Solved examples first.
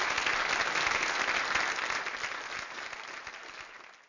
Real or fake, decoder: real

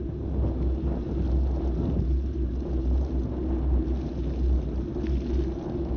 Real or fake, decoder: real